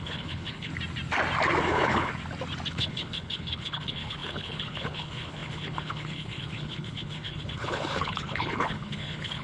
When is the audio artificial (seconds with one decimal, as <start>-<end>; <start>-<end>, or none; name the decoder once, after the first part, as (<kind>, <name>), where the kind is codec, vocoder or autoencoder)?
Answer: 0.0-0.7 (codec, HILCodec); 1.6-2.1; 2.7-9.4